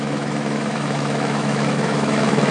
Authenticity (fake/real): fake